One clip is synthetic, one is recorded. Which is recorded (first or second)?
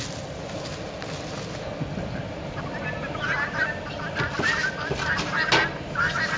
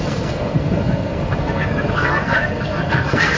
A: first